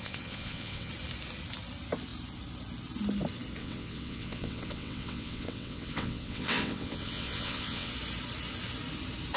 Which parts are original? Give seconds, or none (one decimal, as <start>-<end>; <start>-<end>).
0.9-3.6; 7.9-9.4